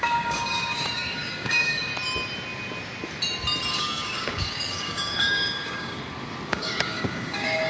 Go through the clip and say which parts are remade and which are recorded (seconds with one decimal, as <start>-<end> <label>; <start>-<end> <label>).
0.0-1.9 remade; 1.9-3.7 recorded; 3.7-6.0 remade; 6.0-6.5 recorded; 6.5-7.7 remade